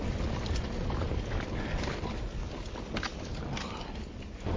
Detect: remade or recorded recorded